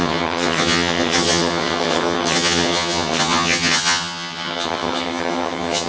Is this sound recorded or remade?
remade